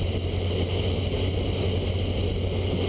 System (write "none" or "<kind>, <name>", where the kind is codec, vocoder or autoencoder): none